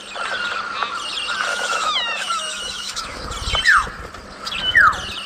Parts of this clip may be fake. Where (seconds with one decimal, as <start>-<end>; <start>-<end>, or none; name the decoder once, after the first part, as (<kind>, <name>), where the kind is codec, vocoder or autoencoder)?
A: 1.5-3.2 (autoencoder, DAC-VAE)